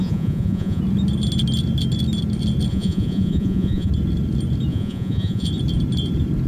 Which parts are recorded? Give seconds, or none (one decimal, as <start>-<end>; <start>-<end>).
0.8-2.7; 3.9-4.7; 5.5-6.5